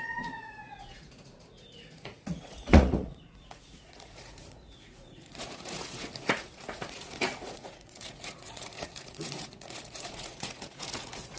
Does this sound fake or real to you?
fake